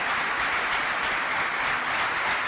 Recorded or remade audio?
recorded